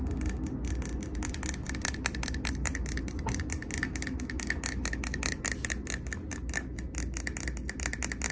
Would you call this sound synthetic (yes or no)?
no